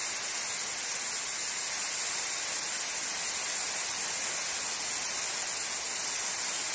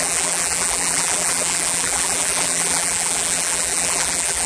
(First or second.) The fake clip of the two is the second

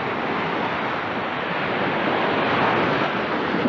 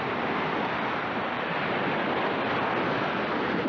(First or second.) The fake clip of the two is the second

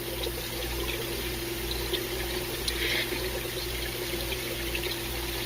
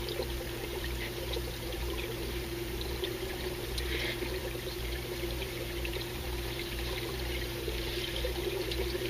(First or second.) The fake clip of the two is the second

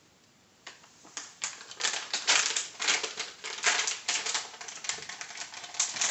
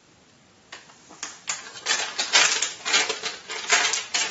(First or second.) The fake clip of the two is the first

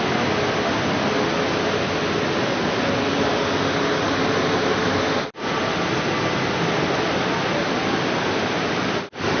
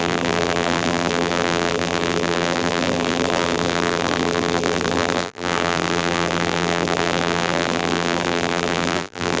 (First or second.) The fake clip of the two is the second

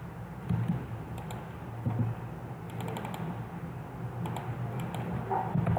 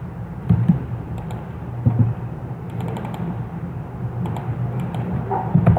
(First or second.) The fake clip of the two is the second